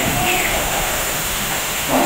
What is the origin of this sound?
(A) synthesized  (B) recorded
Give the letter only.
A